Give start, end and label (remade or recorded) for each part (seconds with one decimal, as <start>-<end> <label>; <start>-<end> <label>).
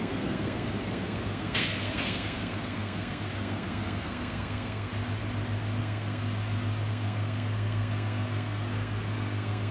0.0-4.9 remade; 4.9-5.8 recorded; 5.8-6.2 remade; 6.2-6.9 recorded; 6.9-9.7 remade